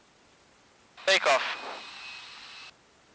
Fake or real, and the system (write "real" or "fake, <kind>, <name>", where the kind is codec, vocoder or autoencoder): real